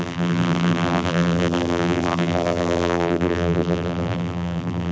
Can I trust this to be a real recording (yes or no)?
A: no